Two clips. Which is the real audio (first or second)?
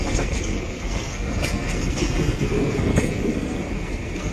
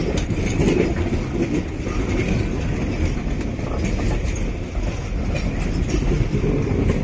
second